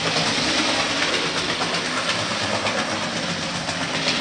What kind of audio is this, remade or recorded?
recorded